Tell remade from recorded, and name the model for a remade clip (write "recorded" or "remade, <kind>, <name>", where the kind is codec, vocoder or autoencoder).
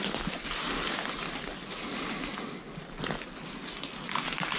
recorded